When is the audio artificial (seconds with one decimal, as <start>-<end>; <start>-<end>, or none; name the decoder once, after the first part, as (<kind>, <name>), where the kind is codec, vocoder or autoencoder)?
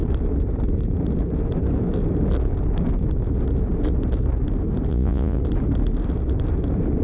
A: 4.9-5.4 (vocoder, Vocos)